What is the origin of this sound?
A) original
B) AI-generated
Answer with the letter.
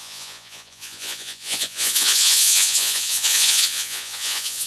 B